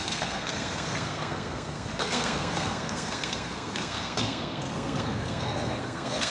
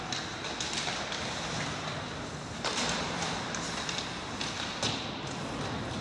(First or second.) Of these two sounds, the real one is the second